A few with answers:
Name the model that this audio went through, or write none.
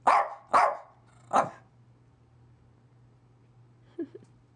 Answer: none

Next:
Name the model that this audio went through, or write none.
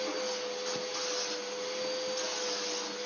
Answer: none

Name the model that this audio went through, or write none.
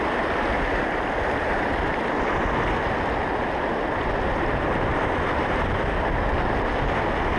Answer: none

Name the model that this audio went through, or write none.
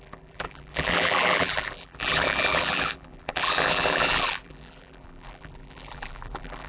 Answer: vocoder, BigVGAN v2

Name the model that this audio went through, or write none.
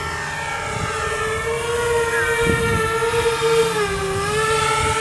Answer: none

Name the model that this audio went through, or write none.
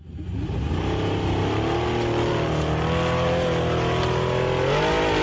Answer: none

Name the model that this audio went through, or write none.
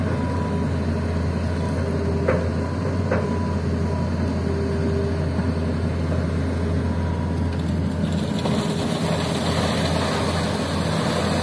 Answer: none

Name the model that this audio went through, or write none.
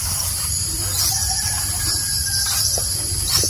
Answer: vocoder, BigVGAN v2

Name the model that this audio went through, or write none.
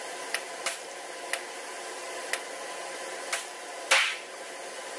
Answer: none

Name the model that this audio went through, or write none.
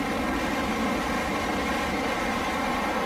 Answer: none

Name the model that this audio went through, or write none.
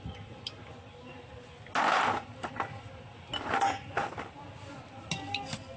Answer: none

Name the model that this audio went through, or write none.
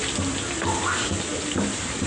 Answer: none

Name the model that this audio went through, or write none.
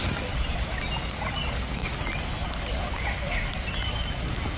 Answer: none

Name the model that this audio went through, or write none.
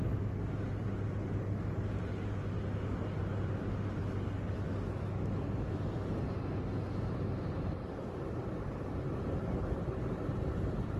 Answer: none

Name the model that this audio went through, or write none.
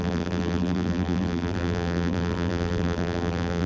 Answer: vocoder, BigVGAN v2